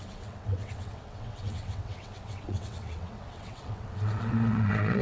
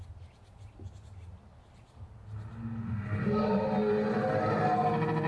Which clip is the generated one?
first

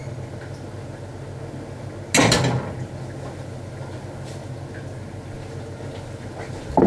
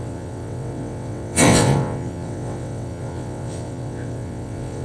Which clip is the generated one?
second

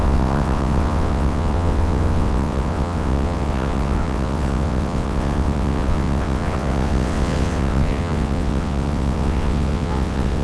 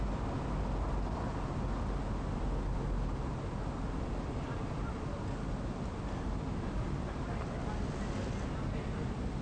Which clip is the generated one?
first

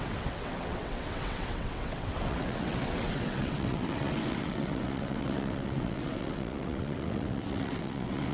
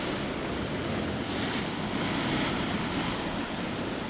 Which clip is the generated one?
first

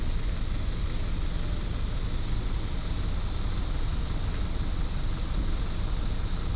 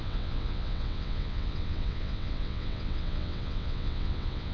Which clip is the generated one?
second